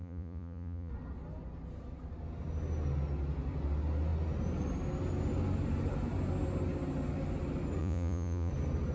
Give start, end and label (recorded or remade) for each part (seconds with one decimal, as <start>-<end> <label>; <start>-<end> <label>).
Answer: 0.0-0.9 remade; 0.9-7.8 recorded; 7.8-8.5 remade; 8.5-8.9 recorded